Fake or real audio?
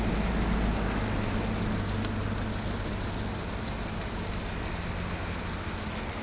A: real